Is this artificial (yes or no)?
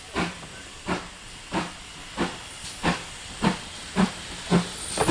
no